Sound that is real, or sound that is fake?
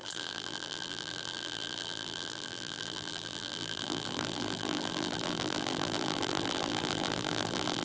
fake